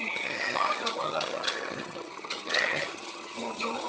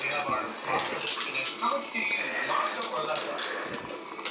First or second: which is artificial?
first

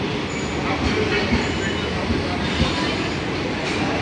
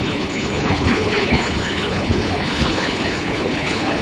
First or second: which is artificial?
second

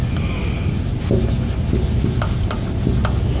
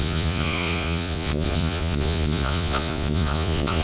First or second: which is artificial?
second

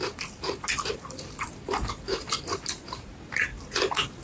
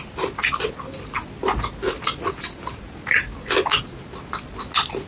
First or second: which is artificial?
first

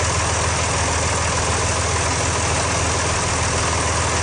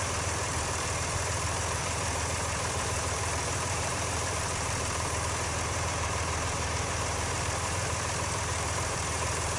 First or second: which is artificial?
second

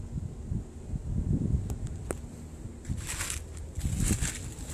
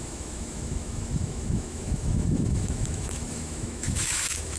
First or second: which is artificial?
second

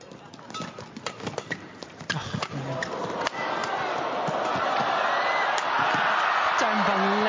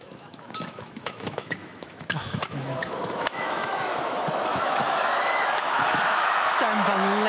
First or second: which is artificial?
second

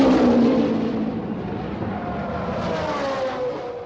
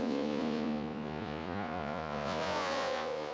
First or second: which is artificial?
second